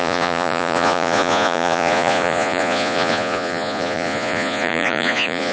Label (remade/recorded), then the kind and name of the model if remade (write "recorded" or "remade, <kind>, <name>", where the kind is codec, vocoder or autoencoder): remade, vocoder, Vocos